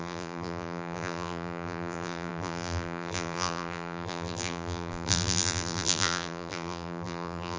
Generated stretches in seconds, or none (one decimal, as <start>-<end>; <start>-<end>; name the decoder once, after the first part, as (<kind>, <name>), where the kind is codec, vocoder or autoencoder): 0.0-7.6 (vocoder, BigVGAN v2)